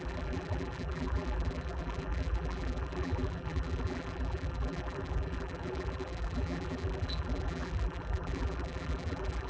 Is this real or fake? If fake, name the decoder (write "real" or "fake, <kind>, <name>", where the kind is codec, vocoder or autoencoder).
fake, vocoder, BigVGAN v2